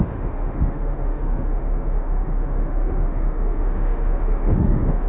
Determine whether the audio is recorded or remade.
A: remade